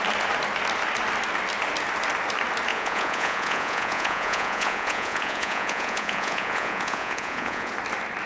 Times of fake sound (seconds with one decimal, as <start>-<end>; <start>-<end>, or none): 2.7-7.7